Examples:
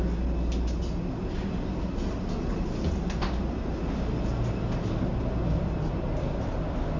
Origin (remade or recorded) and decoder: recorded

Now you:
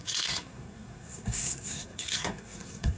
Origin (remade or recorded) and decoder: remade, codec, SNAC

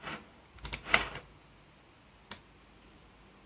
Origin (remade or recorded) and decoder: recorded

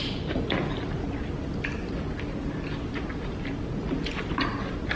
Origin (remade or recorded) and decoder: recorded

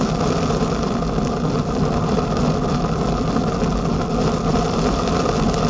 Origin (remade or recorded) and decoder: recorded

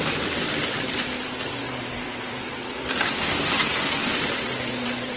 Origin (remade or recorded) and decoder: remade, vocoder, BigVGAN v2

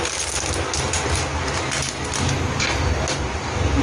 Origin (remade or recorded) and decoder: recorded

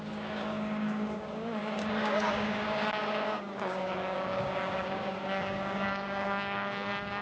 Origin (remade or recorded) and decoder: remade, codec, DAC